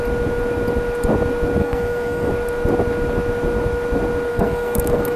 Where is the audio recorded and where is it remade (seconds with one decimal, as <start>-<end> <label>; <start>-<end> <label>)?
0.0-1.6 recorded; 1.6-2.3 remade; 2.3-4.3 recorded; 4.3-5.2 remade